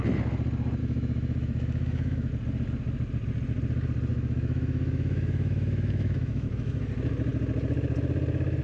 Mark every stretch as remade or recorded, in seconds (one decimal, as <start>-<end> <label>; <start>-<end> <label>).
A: 0.0-0.8 recorded; 0.8-2.3 remade; 2.3-4.1 recorded; 4.1-6.8 remade; 6.8-8.6 recorded